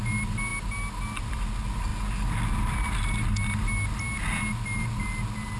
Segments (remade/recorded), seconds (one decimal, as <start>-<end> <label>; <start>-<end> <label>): 0.0-5.6 recorded